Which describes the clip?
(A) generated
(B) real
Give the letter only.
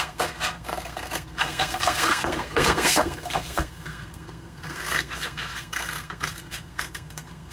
A